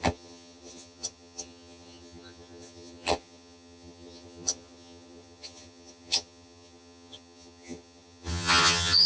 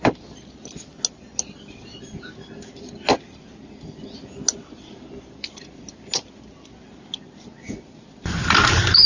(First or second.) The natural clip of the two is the second